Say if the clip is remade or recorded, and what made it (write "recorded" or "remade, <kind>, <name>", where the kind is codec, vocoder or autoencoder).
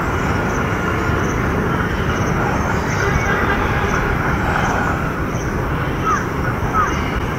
recorded